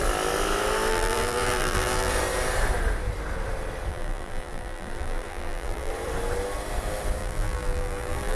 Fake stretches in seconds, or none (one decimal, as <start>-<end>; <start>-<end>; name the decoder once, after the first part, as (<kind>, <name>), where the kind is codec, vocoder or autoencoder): 0.9-2.1 (vocoder, BigVGAN v2); 3.9-5.9; 7.2-8.4